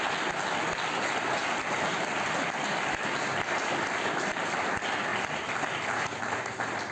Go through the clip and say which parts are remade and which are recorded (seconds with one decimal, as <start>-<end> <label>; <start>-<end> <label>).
0.0-6.9 recorded